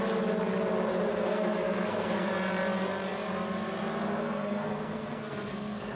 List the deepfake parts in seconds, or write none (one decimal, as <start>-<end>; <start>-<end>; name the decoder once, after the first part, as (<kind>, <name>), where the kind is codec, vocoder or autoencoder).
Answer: 1.1-2.3 (codec, SNAC); 4.2-6.0